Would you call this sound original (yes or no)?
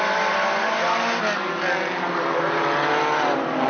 yes